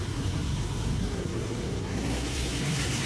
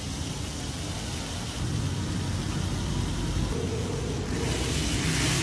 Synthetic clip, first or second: first